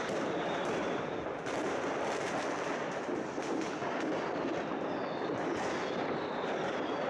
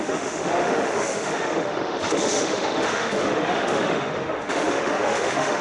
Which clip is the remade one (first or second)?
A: second